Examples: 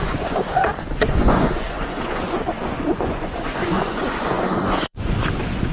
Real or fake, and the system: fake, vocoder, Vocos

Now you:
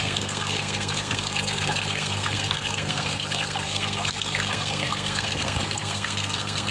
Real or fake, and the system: fake, codec, SNAC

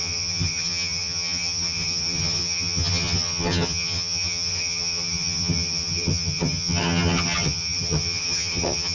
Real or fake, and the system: fake, vocoder, HiFi-GAN